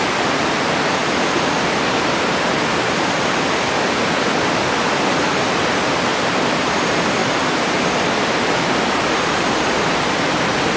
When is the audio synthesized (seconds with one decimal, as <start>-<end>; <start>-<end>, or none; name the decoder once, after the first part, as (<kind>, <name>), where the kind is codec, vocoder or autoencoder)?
6.1-6.8 (vocoder, BigVGAN v2); 7.2-7.8